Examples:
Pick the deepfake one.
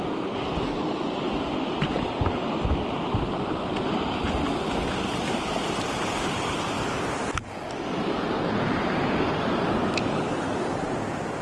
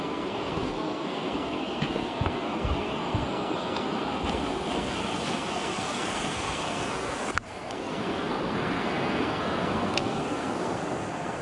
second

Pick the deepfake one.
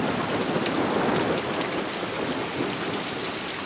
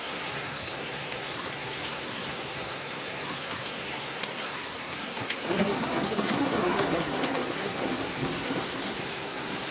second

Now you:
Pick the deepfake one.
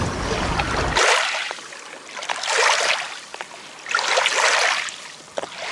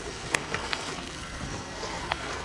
second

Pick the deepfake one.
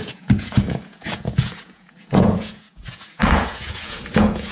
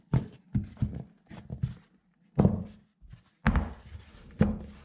first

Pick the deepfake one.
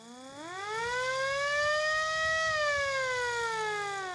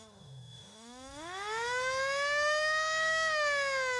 second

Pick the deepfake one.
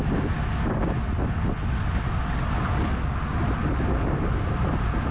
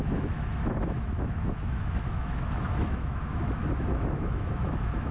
second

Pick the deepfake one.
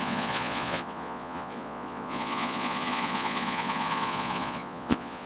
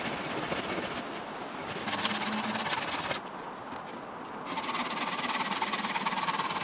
first